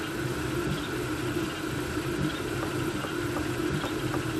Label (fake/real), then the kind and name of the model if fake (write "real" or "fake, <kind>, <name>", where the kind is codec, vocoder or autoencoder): real